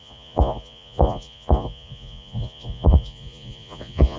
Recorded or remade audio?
remade